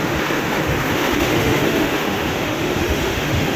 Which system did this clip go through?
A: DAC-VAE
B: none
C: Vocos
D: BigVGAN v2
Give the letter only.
A